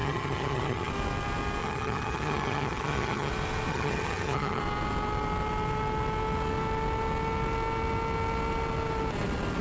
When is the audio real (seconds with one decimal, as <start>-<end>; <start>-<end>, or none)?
0.9-1.6; 3.3-3.7; 4.6-9.6